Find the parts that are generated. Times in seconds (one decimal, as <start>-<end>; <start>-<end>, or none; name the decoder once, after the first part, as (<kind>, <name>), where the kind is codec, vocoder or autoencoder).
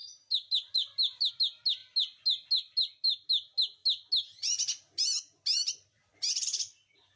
none